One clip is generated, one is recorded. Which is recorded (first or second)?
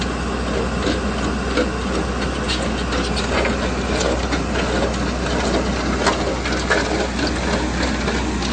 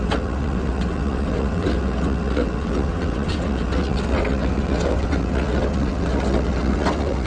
first